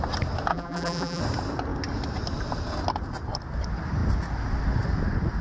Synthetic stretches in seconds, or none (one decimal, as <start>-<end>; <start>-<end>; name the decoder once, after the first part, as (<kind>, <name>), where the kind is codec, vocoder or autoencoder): 0.5-1.2 (vocoder, BigVGAN v2)